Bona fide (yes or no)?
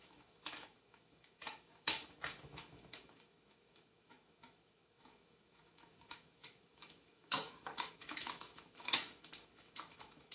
no